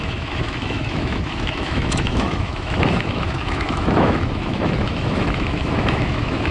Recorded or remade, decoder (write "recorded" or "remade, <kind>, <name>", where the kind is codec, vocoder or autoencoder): remade, autoencoder, DAC-VAE